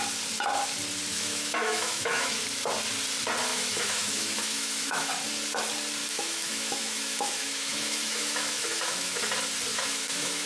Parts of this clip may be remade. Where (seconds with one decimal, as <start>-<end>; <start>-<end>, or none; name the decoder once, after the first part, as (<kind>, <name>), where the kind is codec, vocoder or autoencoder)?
1.1-2.4 (autoencoder, DAC-VAE); 3.5-5.1; 6.0-9.2; 9.7-10.5